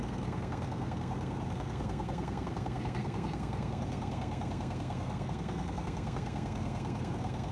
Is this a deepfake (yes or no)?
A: yes